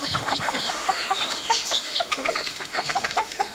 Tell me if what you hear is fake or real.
fake